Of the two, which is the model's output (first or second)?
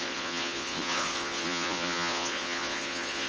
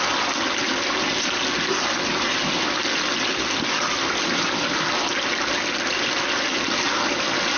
first